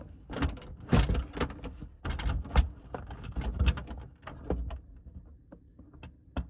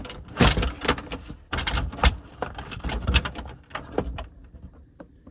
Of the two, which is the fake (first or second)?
second